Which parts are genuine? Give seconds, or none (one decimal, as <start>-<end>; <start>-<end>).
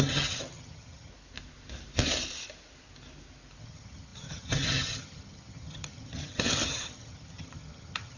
1.1-3.6